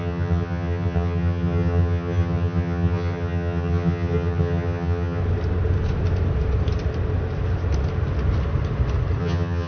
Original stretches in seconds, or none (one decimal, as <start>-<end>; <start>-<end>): 5.2-9.2